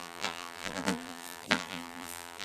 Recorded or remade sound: remade